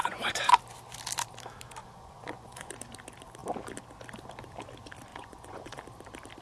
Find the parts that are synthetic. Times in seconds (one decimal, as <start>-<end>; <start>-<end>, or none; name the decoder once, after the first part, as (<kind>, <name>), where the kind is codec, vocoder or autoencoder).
0.0-0.5 (vocoder, Vocos); 1.8-2.7; 5.1-5.8